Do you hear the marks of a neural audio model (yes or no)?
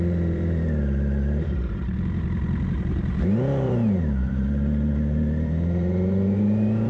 yes